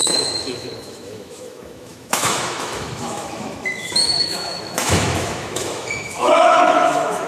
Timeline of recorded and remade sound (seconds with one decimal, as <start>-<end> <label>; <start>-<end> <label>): 0.0-7.3 remade

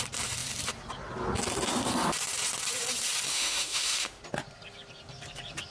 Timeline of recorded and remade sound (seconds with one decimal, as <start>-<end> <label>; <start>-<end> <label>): 0.0-3.3 recorded; 3.3-4.2 remade; 4.2-5.7 recorded